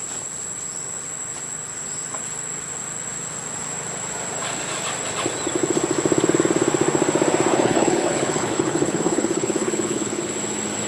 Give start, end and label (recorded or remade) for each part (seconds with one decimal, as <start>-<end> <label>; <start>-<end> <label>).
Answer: 0.0-7.5 recorded; 7.5-10.3 remade; 10.3-10.9 recorded